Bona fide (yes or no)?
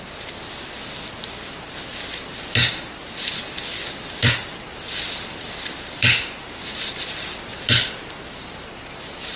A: yes